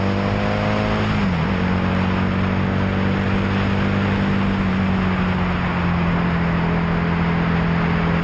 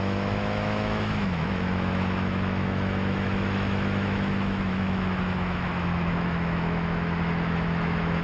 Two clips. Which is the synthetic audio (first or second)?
second